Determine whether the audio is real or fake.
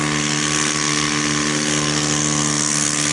real